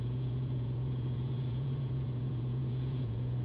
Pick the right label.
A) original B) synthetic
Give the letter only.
B